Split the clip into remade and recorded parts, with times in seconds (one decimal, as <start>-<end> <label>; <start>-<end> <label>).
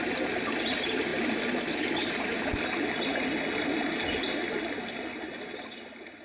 0.0-6.2 recorded